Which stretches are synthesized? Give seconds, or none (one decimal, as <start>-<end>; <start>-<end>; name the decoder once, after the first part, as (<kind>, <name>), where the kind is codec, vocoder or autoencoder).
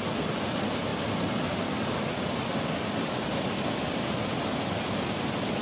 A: none